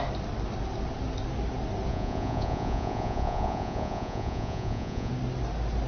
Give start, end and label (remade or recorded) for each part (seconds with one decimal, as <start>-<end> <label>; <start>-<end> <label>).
0.0-1.9 recorded; 1.9-5.1 remade; 5.1-5.9 recorded

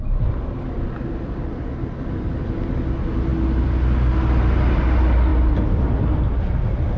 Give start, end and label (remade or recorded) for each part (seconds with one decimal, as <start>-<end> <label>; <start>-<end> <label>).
0.0-7.0 recorded